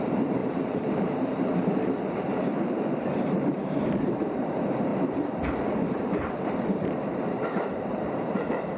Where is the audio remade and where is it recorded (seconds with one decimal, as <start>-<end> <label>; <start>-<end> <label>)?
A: 0.0-8.8 remade